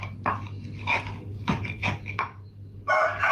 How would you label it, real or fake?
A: fake